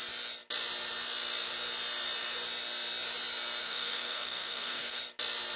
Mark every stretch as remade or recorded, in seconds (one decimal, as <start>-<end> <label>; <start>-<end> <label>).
0.0-3.6 recorded; 3.6-5.0 remade; 5.0-5.6 recorded